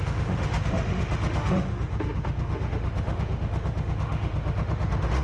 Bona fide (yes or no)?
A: no